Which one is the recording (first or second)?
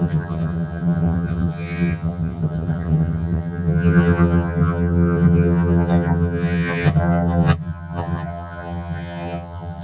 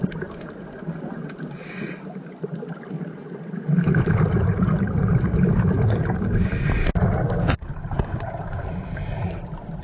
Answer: second